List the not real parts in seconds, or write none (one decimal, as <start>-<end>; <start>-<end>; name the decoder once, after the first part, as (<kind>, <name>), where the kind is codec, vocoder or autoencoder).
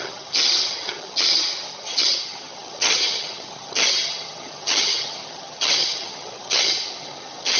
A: 0.0-7.6 (vocoder, HiFi-GAN)